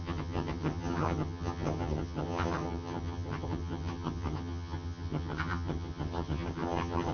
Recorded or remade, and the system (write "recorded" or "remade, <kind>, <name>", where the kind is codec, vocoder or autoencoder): remade, vocoder, HiFi-GAN